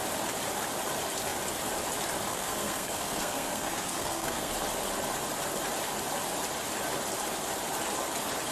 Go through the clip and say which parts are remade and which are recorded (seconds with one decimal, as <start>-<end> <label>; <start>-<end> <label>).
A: 0.0-2.3 recorded; 2.3-4.5 remade; 4.5-8.5 recorded